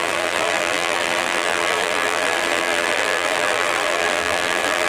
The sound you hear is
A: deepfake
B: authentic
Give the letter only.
A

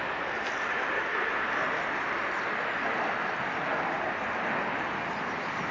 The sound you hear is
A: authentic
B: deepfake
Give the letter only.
A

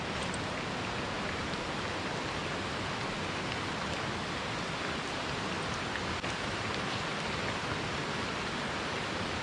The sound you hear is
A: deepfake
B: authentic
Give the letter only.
B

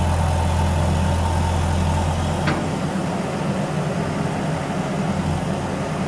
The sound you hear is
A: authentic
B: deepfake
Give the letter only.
A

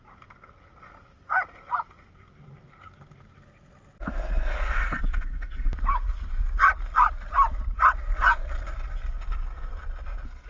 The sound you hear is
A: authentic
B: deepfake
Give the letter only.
A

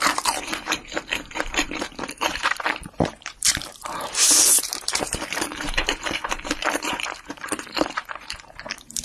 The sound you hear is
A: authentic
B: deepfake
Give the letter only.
B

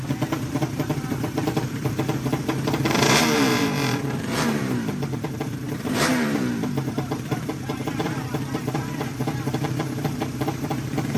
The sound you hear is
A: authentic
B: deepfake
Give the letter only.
B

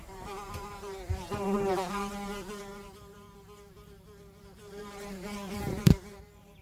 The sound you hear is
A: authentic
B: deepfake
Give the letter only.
B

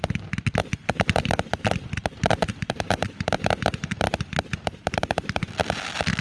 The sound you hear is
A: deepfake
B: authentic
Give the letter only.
A